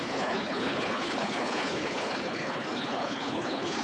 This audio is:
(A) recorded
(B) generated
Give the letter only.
B